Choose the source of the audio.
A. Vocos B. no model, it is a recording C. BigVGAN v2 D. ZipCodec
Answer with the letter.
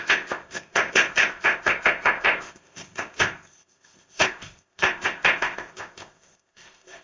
D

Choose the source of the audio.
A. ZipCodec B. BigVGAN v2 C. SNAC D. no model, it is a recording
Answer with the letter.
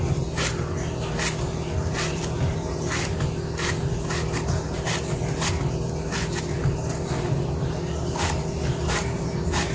D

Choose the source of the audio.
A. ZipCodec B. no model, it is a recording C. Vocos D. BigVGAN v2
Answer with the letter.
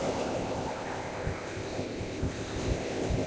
A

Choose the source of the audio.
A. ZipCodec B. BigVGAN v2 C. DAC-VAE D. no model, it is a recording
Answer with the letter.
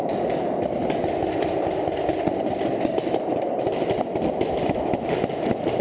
D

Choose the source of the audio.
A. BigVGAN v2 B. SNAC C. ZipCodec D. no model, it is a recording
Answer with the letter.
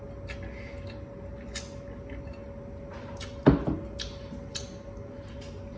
D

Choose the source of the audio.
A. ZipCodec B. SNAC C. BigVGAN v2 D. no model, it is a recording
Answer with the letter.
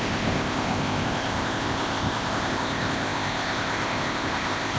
A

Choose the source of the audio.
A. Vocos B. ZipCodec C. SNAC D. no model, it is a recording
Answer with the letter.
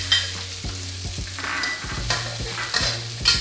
D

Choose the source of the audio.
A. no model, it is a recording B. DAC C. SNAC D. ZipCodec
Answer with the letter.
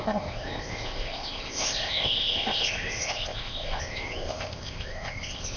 D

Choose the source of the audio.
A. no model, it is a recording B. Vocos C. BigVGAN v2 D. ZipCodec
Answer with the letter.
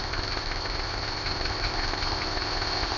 D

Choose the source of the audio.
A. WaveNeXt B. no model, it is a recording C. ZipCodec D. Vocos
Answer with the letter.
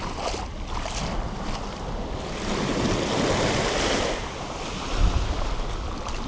B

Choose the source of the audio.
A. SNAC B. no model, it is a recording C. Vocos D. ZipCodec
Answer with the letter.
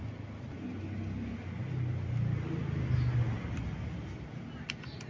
B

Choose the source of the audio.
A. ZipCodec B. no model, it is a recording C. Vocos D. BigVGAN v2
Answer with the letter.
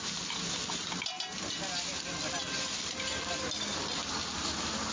B